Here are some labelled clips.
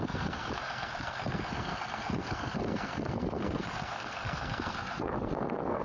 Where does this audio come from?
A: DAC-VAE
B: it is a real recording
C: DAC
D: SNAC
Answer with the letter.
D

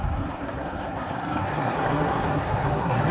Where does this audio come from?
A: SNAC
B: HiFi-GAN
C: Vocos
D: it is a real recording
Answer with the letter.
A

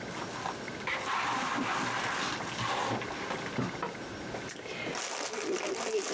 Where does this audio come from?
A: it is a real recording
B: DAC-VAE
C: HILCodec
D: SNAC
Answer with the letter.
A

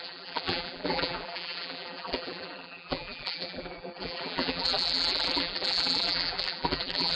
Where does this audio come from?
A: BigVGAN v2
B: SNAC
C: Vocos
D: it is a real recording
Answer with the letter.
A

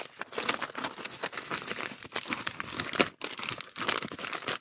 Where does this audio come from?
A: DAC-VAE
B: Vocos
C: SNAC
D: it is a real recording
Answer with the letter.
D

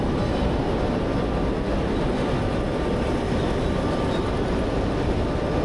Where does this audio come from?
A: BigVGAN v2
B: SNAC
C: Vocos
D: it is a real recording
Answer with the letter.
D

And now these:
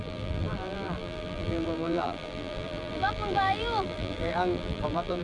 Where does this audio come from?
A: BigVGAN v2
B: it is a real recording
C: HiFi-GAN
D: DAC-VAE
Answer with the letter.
A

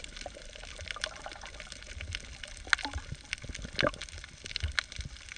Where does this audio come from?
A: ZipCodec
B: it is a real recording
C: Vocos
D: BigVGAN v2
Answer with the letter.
B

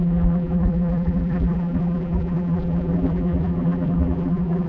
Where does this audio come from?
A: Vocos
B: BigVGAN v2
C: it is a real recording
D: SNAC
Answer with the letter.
B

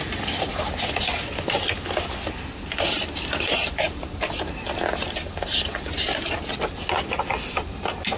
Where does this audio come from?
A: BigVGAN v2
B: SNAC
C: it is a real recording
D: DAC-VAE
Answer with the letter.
C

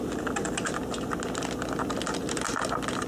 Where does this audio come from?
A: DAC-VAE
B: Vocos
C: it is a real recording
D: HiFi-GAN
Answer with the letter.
C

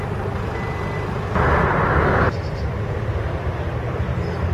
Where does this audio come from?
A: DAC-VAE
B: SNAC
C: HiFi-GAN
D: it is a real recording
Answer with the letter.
D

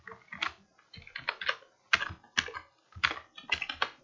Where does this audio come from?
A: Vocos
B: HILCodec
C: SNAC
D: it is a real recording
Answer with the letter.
D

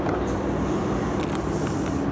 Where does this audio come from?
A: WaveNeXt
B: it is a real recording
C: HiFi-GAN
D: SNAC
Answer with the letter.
B